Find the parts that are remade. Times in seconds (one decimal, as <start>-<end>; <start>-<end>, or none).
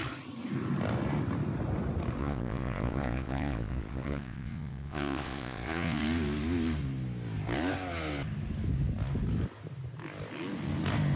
2.2-6.0